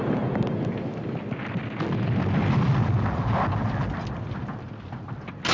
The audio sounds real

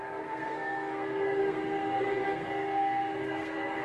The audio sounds fake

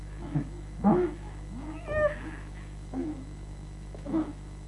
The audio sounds fake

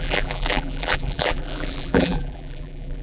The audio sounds fake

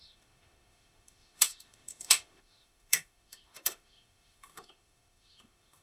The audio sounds fake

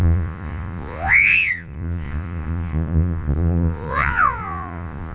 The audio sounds fake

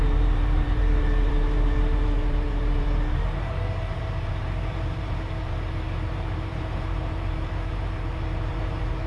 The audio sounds fake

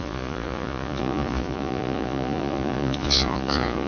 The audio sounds fake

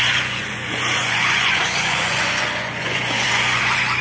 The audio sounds fake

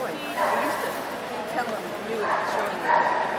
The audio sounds real